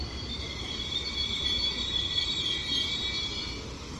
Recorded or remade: remade